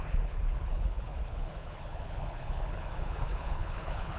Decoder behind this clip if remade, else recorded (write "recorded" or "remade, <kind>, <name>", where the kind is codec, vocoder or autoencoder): remade, codec, HILCodec